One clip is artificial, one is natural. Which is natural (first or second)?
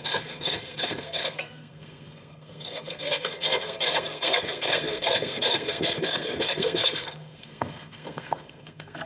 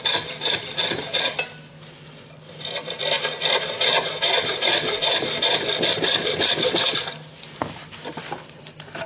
second